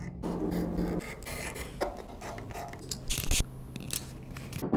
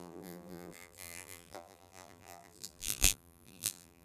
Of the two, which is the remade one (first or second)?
second